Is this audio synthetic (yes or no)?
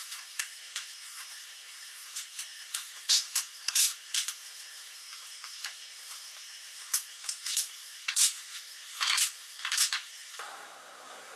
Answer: yes